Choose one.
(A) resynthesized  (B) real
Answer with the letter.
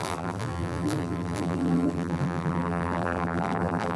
A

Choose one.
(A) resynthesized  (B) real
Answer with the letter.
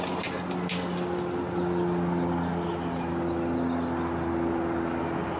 B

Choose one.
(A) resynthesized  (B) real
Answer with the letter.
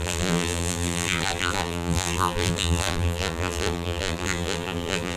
A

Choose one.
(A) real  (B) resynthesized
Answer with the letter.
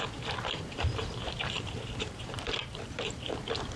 B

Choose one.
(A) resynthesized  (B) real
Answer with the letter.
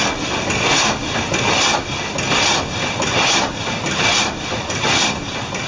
A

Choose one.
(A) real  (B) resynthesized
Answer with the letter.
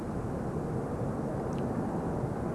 A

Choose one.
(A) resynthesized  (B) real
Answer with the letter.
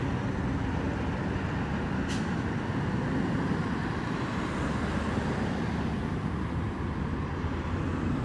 B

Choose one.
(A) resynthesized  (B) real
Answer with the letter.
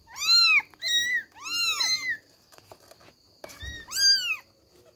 B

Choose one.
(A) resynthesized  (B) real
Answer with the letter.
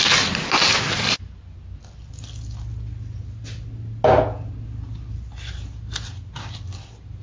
B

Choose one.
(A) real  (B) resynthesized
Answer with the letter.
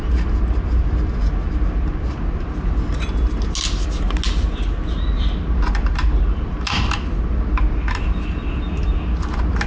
A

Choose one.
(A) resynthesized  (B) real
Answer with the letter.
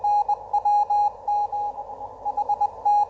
B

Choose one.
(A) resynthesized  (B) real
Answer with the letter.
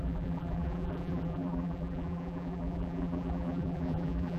A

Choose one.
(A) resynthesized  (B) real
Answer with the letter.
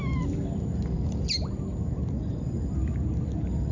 B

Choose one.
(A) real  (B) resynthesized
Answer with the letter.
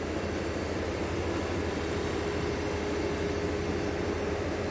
A